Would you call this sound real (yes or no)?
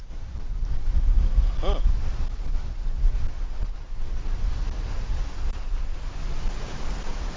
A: yes